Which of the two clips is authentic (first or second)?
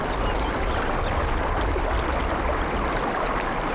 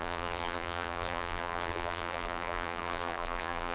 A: first